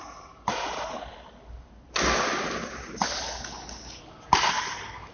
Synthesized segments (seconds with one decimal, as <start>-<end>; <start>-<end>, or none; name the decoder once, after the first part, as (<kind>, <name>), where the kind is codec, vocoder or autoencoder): none